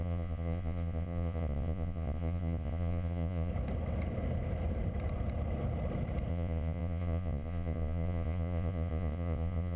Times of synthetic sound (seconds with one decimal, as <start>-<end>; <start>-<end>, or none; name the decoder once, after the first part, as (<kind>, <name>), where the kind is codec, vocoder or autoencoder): 0.0-3.5 (vocoder, Vocos); 6.3-9.8